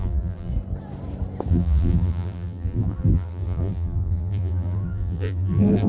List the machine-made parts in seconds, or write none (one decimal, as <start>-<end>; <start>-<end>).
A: 0.0-0.5; 1.5-5.9